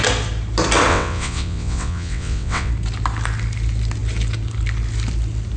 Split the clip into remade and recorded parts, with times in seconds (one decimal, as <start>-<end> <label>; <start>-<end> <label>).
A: 0.0-0.9 recorded; 0.9-2.7 remade; 2.7-5.6 recorded